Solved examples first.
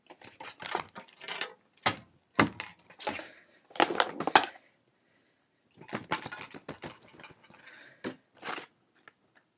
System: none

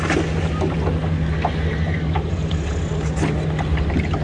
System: none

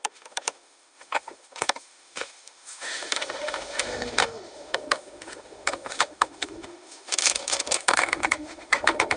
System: autoencoder, DAC-VAE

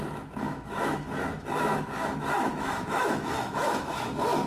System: autoencoder, DAC-VAE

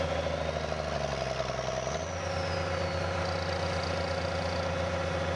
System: none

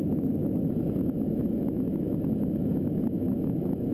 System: autoencoder, DAC-VAE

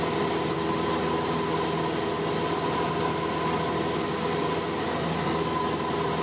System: none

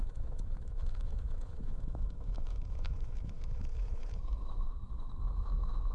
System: autoencoder, DAC-VAE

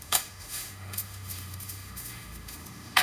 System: autoencoder, DAC-VAE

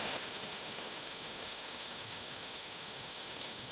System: autoencoder, DAC-VAE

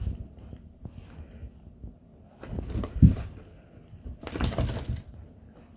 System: none